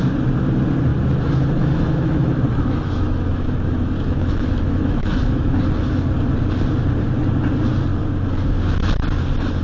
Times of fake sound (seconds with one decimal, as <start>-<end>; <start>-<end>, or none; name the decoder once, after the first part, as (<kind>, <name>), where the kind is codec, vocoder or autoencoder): 0.9-5.6 (autoencoder, DAC-VAE)